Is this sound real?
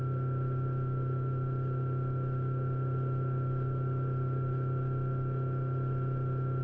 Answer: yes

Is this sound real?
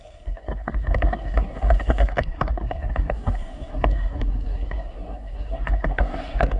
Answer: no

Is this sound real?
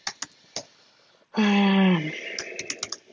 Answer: yes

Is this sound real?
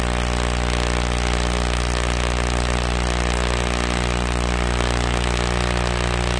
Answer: yes